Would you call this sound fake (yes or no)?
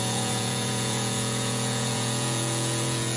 yes